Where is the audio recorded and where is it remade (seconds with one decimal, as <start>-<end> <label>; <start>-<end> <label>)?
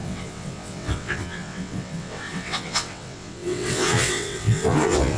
0.0-5.2 remade